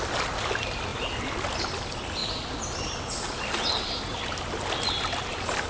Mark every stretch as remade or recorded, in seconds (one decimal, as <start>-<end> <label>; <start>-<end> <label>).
0.0-5.7 recorded